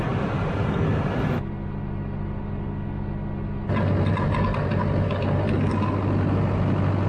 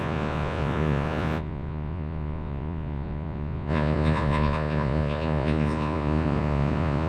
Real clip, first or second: first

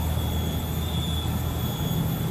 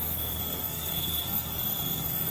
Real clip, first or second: first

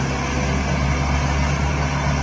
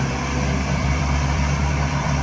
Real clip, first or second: first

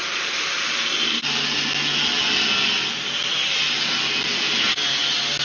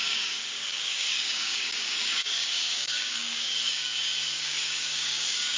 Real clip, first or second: first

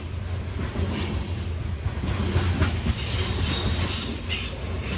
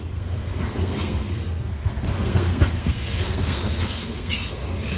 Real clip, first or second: first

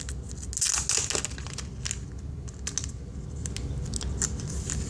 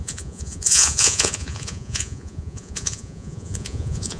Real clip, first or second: first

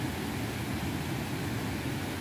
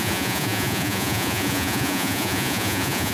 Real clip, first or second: first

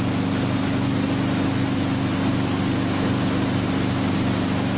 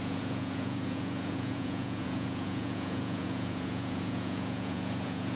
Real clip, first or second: first